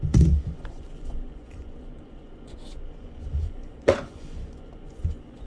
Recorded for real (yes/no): no